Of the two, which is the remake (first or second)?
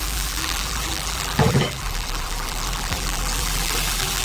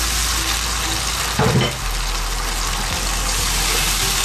first